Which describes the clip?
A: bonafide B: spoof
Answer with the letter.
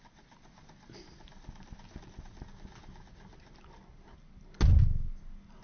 A